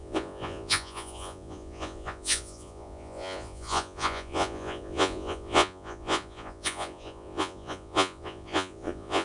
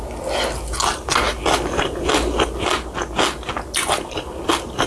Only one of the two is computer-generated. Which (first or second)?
first